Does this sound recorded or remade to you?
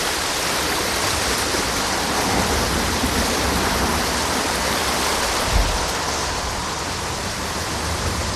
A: recorded